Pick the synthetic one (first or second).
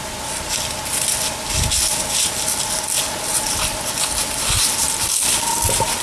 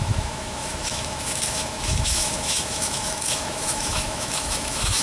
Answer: second